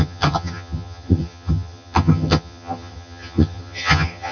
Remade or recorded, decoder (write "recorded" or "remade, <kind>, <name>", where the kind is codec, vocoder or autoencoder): remade, vocoder, HiFi-GAN